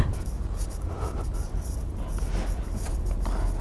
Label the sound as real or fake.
real